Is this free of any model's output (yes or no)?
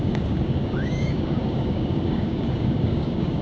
no